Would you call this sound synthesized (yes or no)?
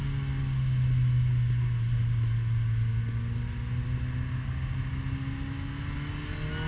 no